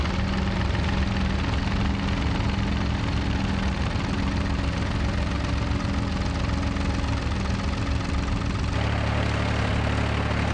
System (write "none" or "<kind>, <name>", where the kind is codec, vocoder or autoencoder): none